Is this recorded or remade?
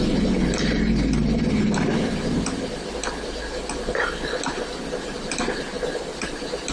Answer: recorded